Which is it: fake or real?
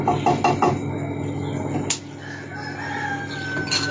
real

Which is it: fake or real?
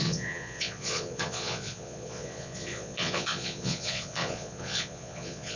fake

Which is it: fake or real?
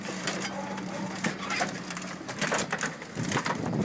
fake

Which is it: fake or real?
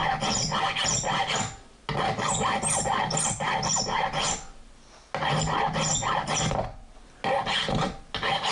real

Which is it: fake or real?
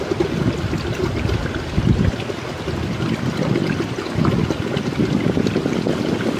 real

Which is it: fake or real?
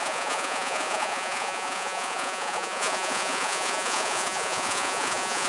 fake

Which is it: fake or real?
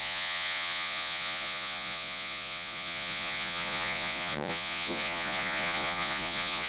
fake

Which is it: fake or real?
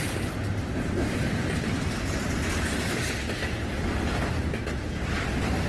real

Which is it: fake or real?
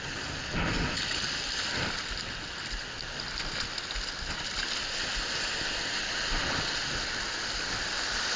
real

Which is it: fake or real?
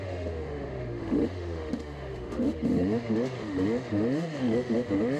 fake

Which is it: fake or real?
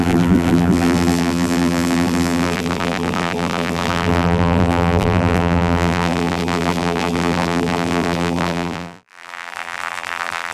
fake